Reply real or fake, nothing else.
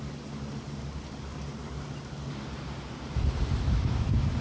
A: real